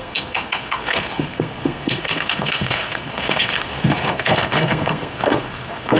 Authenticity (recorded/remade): remade